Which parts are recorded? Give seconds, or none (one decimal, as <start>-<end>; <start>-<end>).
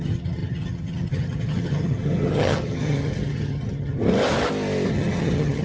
4.0-4.9